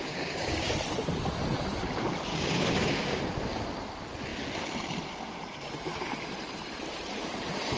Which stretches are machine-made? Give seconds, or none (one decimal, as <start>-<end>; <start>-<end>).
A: 0.0-0.7; 2.3-3.2